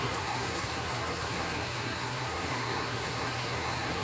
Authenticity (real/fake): fake